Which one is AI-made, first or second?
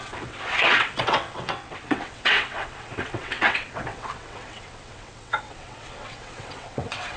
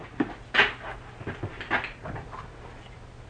first